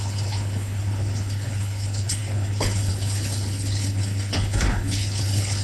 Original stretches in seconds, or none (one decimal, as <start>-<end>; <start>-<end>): none